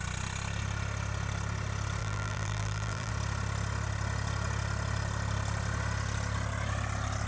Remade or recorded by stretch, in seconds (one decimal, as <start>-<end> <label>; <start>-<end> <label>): 0.0-2.0 recorded; 2.0-3.1 remade; 3.1-7.3 recorded